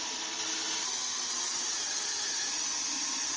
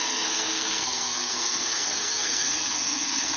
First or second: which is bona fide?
first